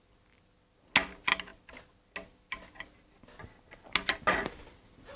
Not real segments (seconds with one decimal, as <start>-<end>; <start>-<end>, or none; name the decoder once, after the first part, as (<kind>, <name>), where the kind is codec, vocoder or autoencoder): none